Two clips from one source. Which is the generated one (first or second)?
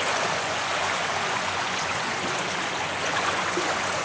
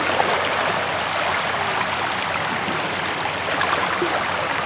first